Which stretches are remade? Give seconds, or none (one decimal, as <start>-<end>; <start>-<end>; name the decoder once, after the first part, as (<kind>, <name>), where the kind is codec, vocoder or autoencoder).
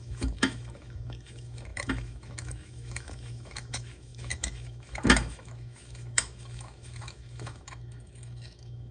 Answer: 0.0-8.9 (autoencoder, DAC-VAE)